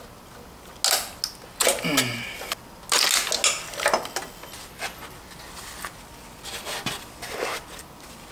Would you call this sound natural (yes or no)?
yes